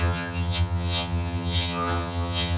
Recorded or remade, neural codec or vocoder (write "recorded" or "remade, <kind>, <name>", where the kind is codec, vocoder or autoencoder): remade, vocoder, HiFi-GAN